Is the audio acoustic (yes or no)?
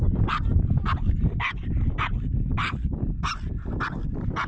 yes